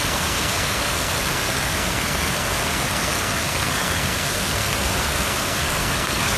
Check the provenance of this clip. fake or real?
fake